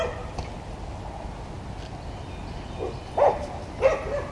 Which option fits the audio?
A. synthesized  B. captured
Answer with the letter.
B